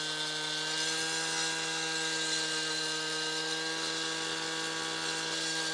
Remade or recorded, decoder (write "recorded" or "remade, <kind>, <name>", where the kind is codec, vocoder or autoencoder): recorded